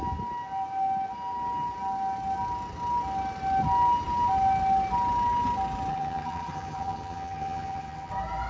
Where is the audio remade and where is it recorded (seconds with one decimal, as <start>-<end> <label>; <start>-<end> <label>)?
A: 0.0-5.9 recorded; 5.9-8.1 remade; 8.1-8.5 recorded